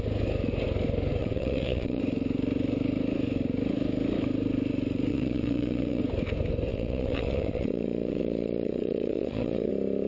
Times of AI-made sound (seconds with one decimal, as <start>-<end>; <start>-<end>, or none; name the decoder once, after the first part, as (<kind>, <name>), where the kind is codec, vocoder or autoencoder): 1.2-2.0 (vocoder, WaveNeXt); 5.1-6.0; 6.7-9.7